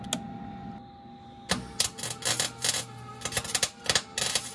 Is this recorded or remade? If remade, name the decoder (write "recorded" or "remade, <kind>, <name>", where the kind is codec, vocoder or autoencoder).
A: recorded